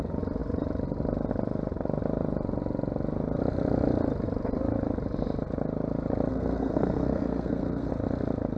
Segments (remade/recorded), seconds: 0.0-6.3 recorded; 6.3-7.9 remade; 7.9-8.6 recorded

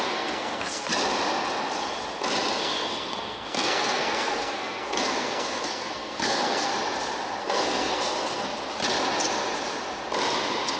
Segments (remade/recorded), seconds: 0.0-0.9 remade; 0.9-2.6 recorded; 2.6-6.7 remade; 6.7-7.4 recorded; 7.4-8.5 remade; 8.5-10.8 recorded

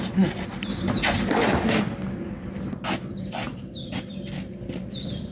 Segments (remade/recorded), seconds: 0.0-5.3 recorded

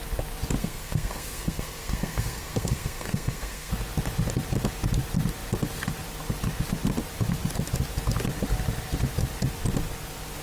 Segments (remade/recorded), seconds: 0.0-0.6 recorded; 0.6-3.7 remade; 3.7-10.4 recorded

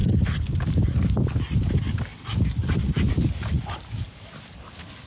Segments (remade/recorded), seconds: 0.0-5.1 recorded

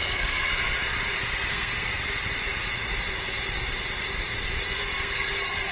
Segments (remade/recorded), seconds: 0.0-0.5 remade; 0.5-1.5 recorded; 1.5-1.9 remade; 1.9-5.0 recorded; 5.0-5.7 remade